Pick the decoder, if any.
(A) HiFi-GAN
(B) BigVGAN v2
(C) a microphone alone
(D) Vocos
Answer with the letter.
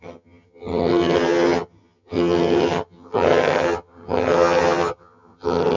A